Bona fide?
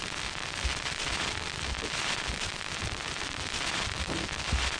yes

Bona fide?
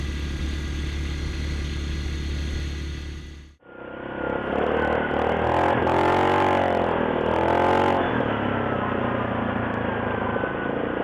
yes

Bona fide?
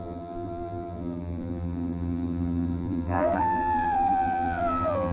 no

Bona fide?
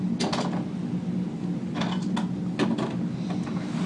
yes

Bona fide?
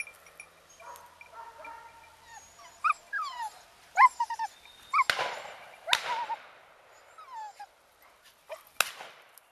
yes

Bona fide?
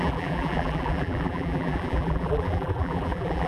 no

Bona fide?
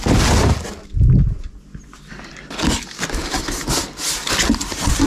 yes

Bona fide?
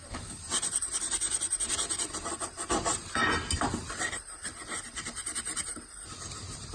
no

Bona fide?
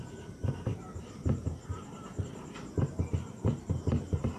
no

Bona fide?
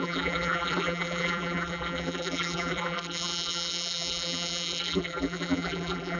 no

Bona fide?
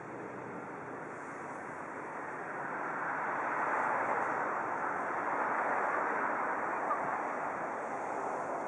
yes